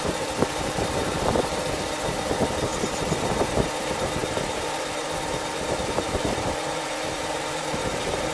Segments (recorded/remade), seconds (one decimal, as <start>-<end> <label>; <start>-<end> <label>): 0.0-2.7 remade; 2.7-3.5 recorded; 3.5-8.3 remade